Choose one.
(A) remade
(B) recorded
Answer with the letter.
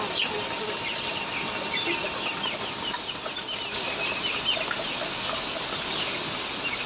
B